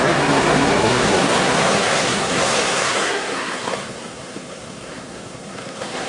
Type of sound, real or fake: fake